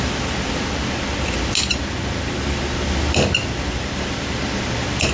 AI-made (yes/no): no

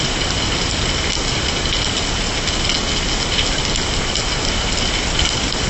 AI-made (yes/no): no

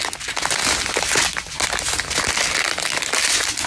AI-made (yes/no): no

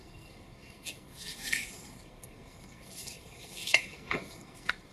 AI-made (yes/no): yes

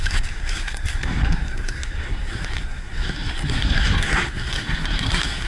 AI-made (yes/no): yes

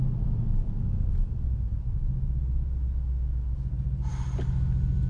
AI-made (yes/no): no